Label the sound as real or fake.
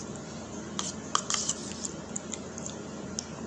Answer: real